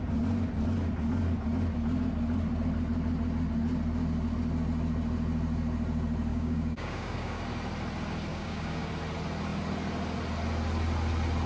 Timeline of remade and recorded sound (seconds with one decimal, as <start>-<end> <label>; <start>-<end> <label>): 0.0-6.3 recorded; 6.3-7.4 remade; 7.4-8.3 recorded; 8.3-8.9 remade; 8.9-11.5 recorded